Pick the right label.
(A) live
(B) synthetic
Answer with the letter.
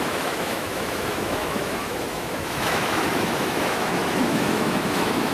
B